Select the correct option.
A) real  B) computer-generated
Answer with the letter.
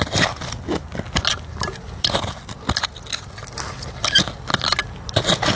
A